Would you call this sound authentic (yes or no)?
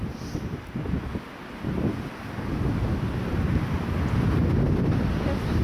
yes